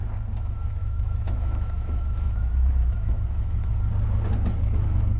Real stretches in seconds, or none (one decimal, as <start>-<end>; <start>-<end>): 0.0-0.8; 3.7-5.2